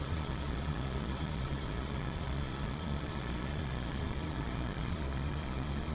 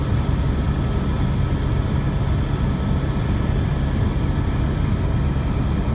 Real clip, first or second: second